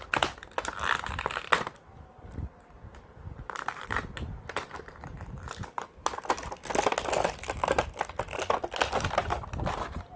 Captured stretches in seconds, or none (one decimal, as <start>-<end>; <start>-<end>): 0.0-2.9; 6.3-9.2